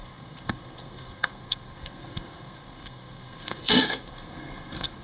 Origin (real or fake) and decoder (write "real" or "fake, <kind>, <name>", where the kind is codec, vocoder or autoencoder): fake, codec, SNAC